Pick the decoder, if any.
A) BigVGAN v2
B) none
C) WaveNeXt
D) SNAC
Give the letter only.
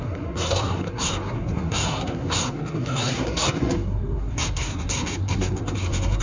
D